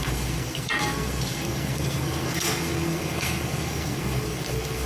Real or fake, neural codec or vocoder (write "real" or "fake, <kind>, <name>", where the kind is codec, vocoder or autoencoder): fake, codec, SNAC